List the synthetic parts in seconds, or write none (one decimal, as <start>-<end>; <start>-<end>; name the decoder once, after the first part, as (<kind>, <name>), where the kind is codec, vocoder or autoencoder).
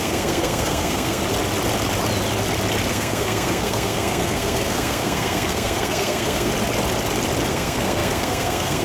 0.0-1.2 (codec, SNAC); 2.9-6.5; 7.5-8.8